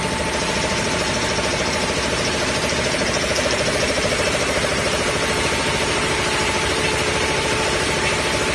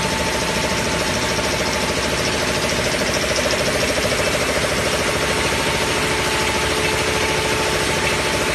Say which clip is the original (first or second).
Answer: second